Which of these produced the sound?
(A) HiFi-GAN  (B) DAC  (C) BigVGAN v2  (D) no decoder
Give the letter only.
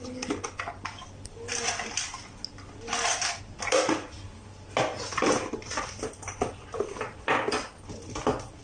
D